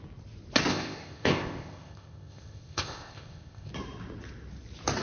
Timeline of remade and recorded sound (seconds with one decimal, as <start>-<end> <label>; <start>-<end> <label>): 0.0-0.7 recorded; 0.7-3.7 remade; 3.7-5.0 recorded